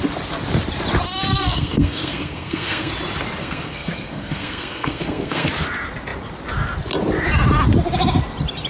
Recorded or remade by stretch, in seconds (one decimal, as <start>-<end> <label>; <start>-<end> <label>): 0.0-1.3 recorded; 1.3-2.9 remade; 2.9-3.4 recorded; 3.4-5.5 remade; 5.5-8.7 recorded